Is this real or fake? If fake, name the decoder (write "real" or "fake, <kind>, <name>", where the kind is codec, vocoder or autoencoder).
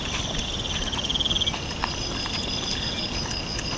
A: real